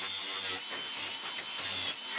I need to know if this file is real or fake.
real